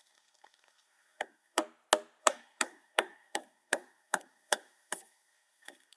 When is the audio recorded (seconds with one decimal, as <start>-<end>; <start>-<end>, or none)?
1.6-2.2

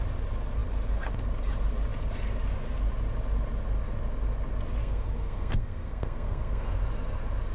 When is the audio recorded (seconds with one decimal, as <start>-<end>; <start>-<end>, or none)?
0.0-4.8; 6.8-7.5

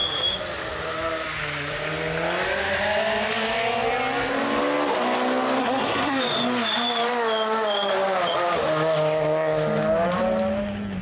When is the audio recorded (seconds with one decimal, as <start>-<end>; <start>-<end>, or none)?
0.0-5.6; 6.2-11.0

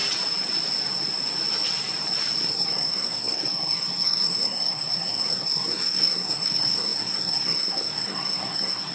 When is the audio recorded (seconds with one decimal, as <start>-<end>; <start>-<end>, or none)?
0.0-2.4

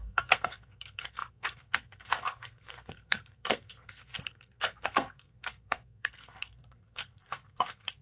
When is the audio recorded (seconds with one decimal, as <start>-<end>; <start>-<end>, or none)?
none